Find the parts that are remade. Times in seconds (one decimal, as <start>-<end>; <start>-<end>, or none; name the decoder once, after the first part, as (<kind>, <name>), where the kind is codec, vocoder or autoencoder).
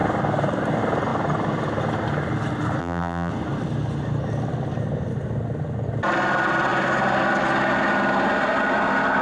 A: 2.8-3.3 (vocoder, BigVGAN v2)